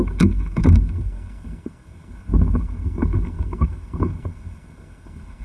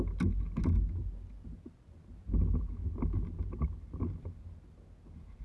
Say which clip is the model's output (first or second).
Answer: first